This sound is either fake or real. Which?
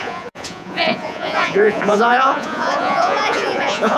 fake